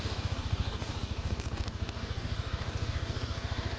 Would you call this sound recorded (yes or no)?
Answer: no